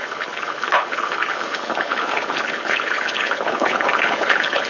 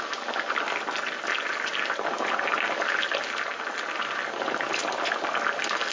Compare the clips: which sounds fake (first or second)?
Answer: first